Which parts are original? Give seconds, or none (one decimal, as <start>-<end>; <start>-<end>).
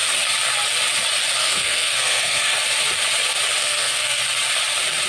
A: 0.0-1.4; 2.6-3.6; 4.2-5.1